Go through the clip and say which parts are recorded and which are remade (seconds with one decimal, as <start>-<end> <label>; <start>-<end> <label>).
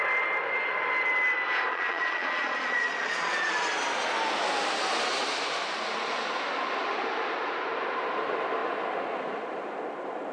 0.0-1.7 recorded; 1.7-3.5 remade; 3.5-10.3 recorded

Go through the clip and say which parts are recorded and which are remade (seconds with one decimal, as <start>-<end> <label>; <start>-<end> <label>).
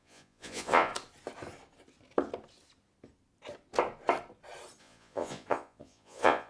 0.0-0.9 remade; 0.9-4.8 recorded; 4.8-6.5 remade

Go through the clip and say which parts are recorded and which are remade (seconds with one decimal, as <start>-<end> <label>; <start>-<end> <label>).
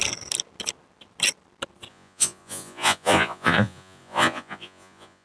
0.0-1.9 recorded; 1.9-5.2 remade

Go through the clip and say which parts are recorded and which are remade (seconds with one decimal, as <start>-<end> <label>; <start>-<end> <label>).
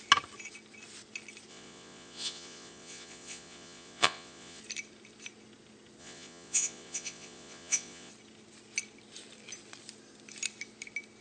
0.0-1.5 recorded; 1.5-4.6 remade; 4.6-6.0 recorded; 6.0-8.1 remade; 8.1-11.2 recorded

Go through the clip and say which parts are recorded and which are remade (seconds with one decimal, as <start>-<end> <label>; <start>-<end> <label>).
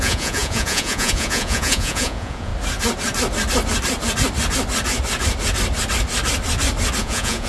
0.0-2.5 remade; 2.5-7.0 recorded; 7.0-7.5 remade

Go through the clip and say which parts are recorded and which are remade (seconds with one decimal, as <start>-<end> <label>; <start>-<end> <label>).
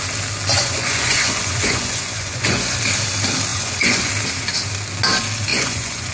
0.0-0.5 recorded; 0.5-2.8 remade; 2.8-3.5 recorded; 3.5-4.1 remade; 4.1-5.5 recorded; 5.5-6.1 remade